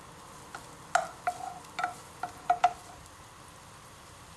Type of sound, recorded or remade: recorded